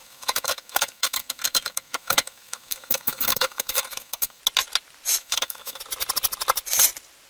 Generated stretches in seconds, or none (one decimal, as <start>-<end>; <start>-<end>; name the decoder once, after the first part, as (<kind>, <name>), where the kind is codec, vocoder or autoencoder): 0.0-4.4 (codec, SNAC); 5.2-5.8